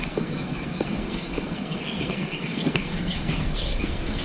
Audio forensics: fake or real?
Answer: fake